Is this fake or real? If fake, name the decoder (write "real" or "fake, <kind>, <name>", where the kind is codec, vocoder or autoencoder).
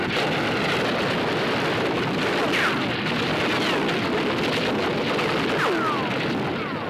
real